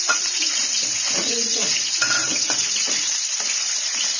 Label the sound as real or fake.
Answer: fake